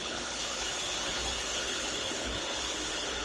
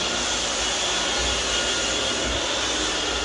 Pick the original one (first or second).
second